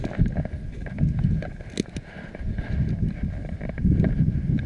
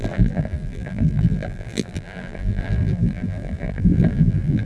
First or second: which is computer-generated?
second